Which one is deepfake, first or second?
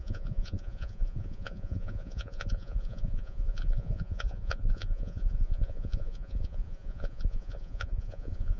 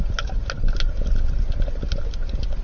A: first